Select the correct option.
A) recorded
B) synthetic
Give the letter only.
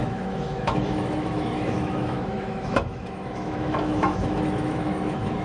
B